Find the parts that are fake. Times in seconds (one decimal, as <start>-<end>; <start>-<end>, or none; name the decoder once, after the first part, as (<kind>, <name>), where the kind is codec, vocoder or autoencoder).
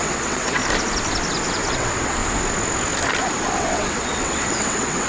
0.0-0.6 (vocoder, WaveNeXt); 1.7-2.2; 3.6-5.1